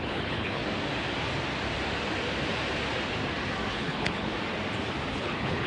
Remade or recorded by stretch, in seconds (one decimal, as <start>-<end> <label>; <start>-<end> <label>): 0.0-0.6 remade; 0.6-3.7 recorded; 3.7-4.3 remade; 4.3-5.2 recorded; 5.2-5.7 remade